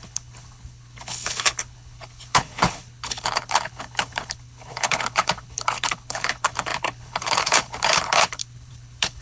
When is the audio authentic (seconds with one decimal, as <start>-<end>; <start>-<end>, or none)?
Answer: none